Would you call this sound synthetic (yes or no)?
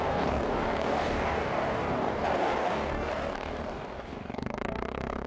yes